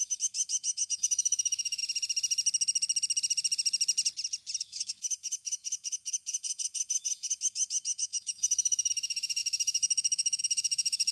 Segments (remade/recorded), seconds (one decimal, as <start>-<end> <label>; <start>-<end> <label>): 0.0-1.8 remade; 1.8-4.6 recorded; 4.6-11.1 remade